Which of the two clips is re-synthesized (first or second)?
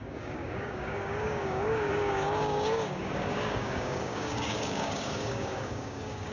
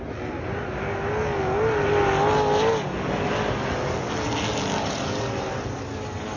first